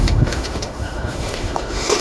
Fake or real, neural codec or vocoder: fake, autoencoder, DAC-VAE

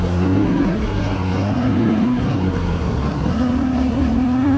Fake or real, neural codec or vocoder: fake, codec, SNAC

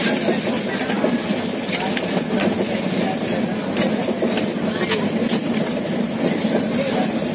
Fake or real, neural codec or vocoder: real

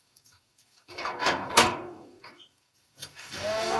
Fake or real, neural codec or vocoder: fake, codec, DAC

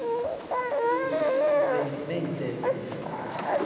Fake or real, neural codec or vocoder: fake, autoencoder, DAC-VAE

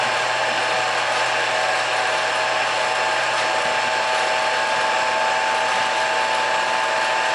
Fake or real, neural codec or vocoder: real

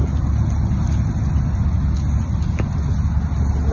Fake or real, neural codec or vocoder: real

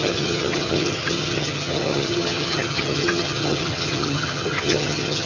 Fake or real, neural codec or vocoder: fake, vocoder, HiFi-GAN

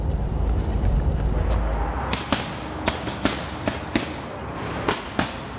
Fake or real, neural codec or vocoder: real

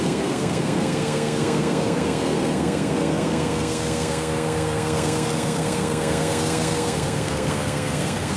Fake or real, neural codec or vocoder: fake, codec, SNAC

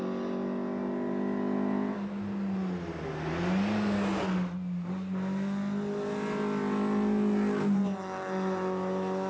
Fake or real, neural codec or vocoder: real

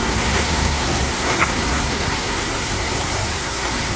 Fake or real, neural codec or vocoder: fake, codec, SNAC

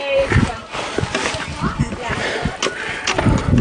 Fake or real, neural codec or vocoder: real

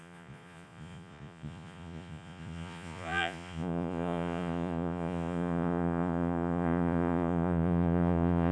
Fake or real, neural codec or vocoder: fake, vocoder, Vocos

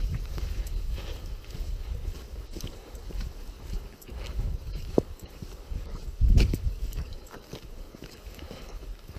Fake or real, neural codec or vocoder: fake, codec, DAC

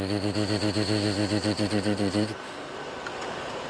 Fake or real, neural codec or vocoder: real